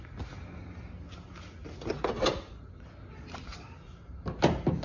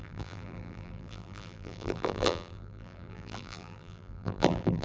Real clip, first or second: first